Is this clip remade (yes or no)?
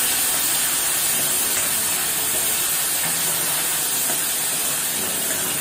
no